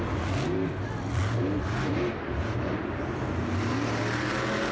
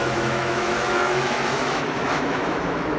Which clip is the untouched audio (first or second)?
first